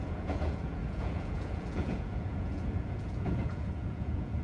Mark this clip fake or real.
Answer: fake